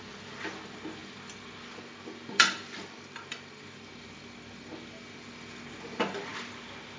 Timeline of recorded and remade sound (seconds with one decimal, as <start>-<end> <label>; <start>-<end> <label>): 0.0-6.3 remade; 6.3-7.0 recorded